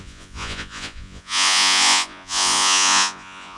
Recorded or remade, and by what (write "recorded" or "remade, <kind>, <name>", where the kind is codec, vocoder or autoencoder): remade, vocoder, Vocos